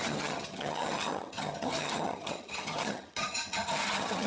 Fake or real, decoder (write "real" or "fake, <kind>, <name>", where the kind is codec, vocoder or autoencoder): fake, vocoder, HiFi-GAN